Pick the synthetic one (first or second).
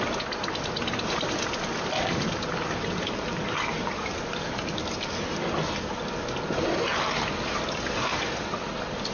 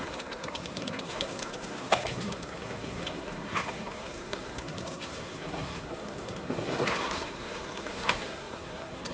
second